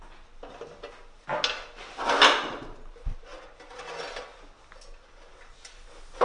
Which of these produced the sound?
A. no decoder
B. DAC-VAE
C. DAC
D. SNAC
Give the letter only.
A